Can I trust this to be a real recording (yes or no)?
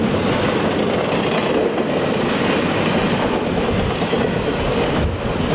yes